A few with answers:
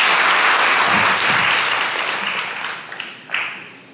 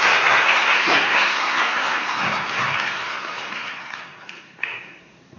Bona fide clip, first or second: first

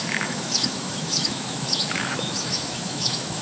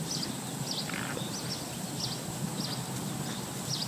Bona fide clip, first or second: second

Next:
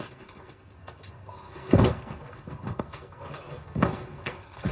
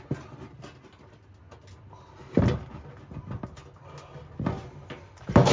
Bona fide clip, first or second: second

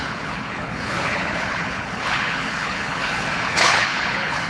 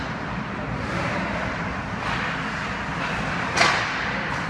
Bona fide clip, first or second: second